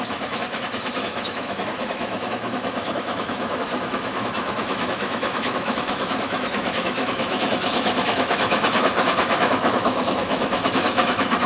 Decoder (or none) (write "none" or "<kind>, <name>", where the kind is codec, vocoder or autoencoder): autoencoder, DAC-VAE